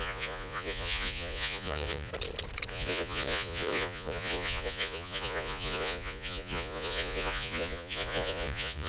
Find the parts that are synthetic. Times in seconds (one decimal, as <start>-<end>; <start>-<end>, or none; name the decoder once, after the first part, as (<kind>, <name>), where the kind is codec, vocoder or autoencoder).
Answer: 0.0-2.1 (vocoder, Vocos); 2.7-8.9